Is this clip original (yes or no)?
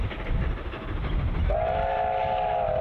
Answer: yes